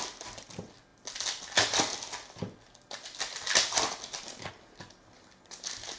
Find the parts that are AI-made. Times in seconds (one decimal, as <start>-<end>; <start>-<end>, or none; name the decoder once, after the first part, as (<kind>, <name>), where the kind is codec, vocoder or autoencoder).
none